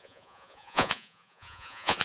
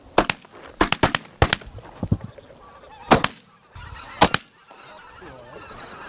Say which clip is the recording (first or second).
second